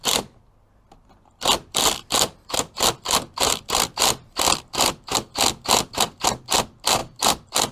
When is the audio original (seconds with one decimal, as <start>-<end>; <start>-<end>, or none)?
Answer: 0.0-7.0